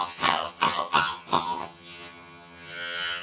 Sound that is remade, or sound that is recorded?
remade